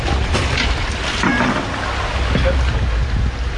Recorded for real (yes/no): yes